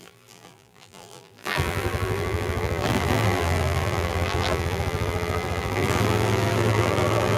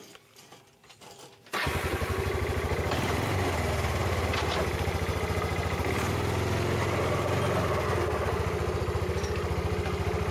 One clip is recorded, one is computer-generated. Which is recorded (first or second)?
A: second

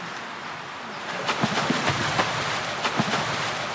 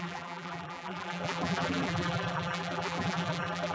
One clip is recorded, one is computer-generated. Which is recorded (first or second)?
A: first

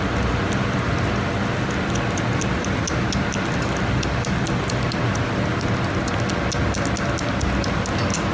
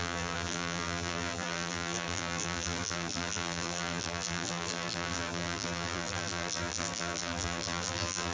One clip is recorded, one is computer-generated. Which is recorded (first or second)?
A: first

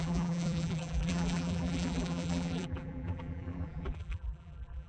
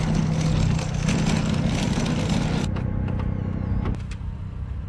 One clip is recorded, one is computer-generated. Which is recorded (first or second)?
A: second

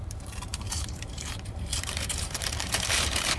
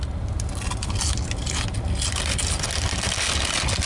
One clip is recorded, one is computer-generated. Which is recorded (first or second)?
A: second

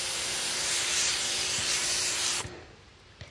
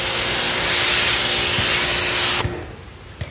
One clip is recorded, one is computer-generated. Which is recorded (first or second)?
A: second